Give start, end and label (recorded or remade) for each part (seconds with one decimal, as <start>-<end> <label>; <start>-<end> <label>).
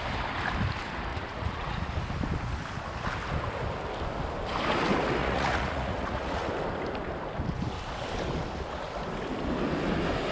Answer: 0.0-1.1 recorded; 1.1-1.9 remade; 1.9-5.2 recorded; 5.2-6.5 remade; 6.5-10.3 recorded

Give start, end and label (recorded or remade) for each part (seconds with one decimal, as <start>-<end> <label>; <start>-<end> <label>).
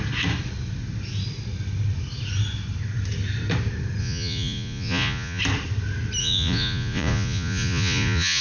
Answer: 0.0-4.0 recorded; 4.0-5.4 remade; 5.4-6.2 recorded; 6.2-8.4 remade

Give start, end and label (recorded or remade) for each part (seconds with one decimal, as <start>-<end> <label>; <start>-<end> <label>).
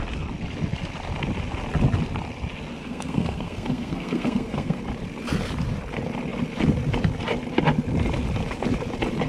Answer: 0.0-2.8 recorded; 2.8-4.8 remade; 4.8-9.3 recorded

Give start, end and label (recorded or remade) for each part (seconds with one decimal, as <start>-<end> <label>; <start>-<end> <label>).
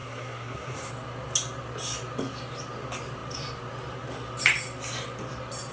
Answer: 0.0-0.9 remade; 0.9-5.7 recorded